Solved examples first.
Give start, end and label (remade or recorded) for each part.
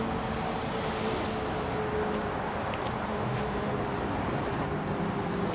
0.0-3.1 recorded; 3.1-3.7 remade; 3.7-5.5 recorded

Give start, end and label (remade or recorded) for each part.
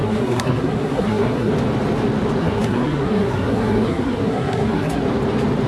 0.0-1.5 remade; 1.5-2.4 recorded; 2.4-5.0 remade; 5.0-5.7 recorded